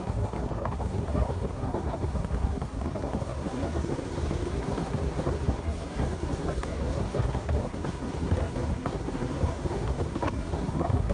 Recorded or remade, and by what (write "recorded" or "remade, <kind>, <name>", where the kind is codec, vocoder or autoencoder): remade, codec, SNAC